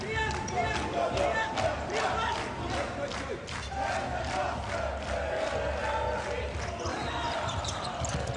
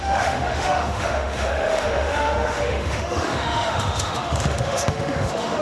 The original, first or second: first